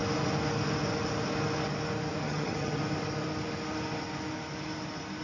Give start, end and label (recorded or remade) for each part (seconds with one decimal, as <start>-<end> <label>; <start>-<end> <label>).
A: 0.0-2.2 recorded; 2.2-2.8 remade; 2.8-5.2 recorded